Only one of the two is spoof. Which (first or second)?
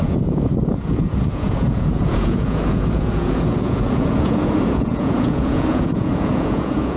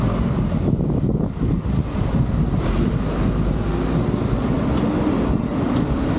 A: first